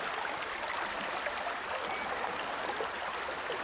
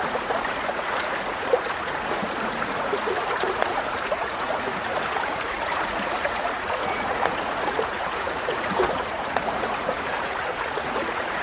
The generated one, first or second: second